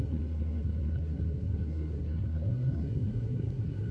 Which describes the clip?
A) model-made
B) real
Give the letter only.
A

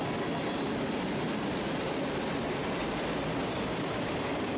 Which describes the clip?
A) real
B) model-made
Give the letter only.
A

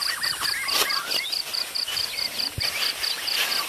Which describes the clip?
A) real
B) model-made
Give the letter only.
A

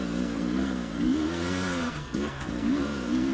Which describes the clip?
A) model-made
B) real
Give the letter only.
A